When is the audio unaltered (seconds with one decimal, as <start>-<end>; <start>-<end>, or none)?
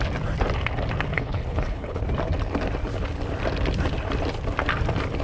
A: 0.0-1.1; 2.0-5.2